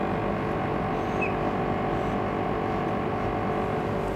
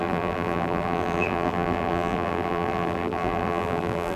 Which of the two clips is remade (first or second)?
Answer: second